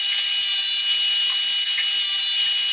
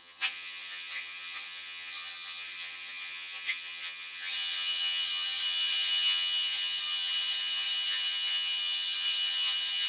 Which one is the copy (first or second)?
second